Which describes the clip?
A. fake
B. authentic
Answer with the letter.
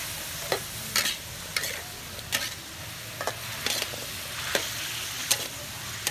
B